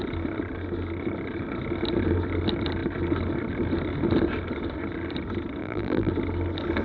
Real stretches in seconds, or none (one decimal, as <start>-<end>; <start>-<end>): 0.0-5.6; 6.1-6.8